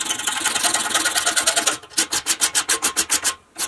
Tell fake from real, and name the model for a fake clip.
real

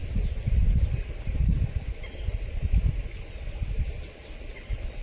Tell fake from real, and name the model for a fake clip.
real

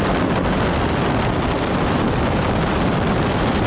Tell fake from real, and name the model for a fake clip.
fake, vocoder, BigVGAN v2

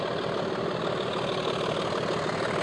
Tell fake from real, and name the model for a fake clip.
real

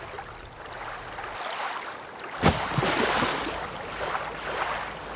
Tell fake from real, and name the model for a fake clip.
real